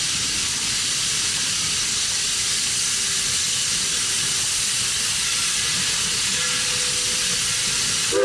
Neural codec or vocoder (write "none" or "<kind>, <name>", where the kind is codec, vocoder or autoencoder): none